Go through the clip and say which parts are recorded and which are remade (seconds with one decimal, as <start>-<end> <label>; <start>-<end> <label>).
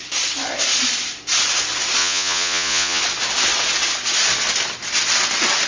0.0-2.0 recorded; 2.0-3.0 remade; 3.0-5.7 recorded